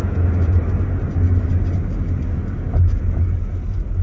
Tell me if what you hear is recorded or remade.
recorded